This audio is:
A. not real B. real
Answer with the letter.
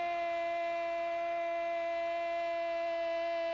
B